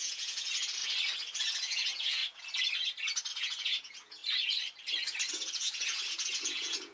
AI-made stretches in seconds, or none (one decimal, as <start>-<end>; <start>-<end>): 0.0-0.8; 1.4-2.2; 3.3-4.2; 5.3-6.9